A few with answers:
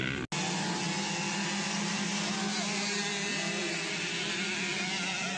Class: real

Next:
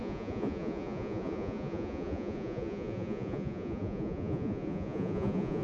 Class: fake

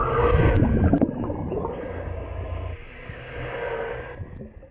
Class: real